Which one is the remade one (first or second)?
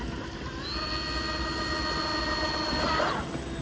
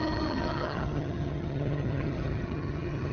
second